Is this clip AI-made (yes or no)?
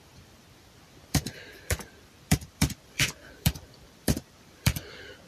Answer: yes